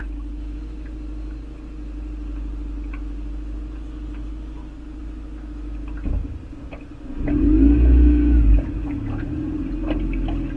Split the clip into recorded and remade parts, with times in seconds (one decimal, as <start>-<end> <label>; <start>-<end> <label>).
0.0-10.6 recorded